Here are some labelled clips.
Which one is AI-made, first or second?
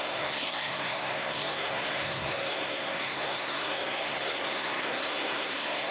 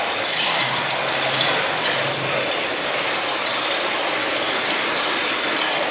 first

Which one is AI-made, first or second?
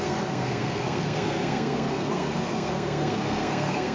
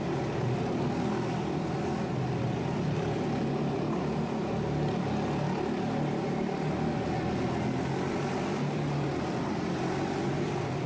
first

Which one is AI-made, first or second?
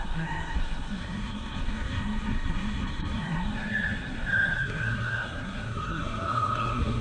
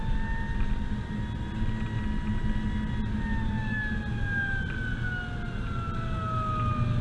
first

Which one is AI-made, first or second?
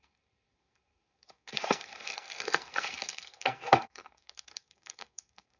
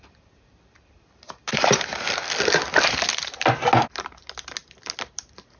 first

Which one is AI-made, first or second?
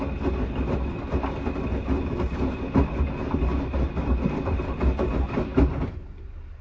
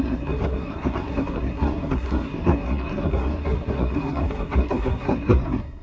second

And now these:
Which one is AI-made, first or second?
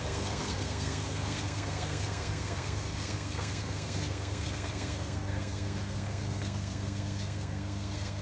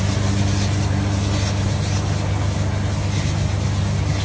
first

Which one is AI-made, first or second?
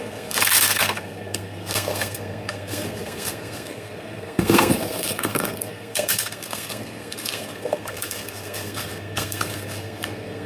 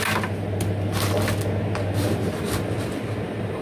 first